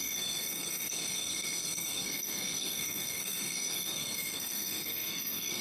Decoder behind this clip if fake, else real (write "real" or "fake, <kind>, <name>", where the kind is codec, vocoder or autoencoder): fake, codec, SNAC